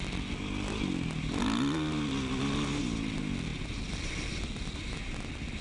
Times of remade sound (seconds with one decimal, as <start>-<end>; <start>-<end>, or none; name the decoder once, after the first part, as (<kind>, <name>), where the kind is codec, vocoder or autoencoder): none